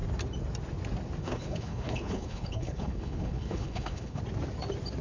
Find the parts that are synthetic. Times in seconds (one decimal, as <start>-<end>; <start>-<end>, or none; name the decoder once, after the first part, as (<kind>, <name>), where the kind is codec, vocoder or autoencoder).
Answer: 1.2-4.2 (codec, HILCodec)